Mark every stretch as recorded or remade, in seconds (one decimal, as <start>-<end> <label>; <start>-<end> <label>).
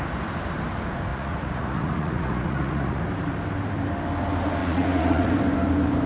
0.0-1.1 recorded; 1.1-3.0 remade; 3.0-4.6 recorded; 4.6-5.4 remade; 5.4-6.1 recorded